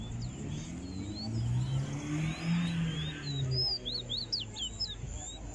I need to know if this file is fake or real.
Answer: real